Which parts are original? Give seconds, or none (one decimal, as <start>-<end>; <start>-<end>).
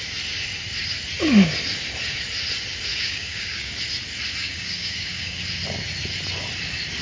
0.0-2.9; 3.8-4.4; 5.4-7.0